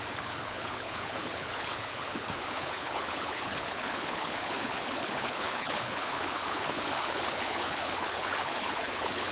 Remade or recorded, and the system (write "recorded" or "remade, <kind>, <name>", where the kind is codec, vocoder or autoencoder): remade, codec, HILCodec